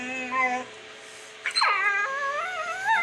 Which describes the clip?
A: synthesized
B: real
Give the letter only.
B